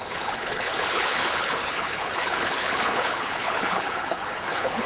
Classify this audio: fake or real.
fake